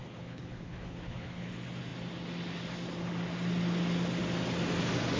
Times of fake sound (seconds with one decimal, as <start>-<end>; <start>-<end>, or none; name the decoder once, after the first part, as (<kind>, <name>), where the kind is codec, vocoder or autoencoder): 0.0-1.5 (codec, HILCodec)